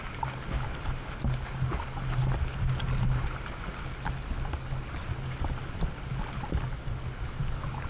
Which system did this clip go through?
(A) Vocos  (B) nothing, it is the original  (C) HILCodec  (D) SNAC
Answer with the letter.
B